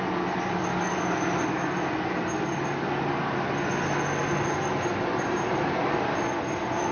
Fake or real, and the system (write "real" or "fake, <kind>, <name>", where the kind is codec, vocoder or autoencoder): real